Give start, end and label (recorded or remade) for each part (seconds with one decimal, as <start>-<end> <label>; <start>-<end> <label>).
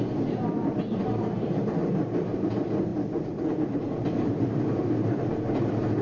0.0-6.0 recorded